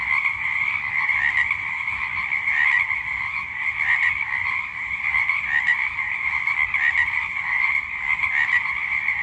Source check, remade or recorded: recorded